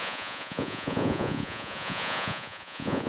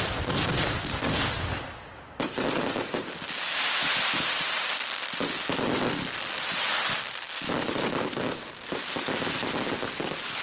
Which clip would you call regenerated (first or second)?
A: first